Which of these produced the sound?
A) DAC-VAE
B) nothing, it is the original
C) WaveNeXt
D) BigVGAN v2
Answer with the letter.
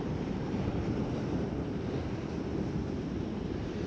D